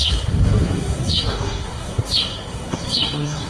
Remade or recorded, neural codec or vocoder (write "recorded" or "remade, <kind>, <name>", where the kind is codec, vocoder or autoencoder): remade, codec, SNAC